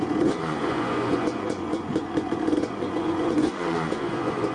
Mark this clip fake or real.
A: fake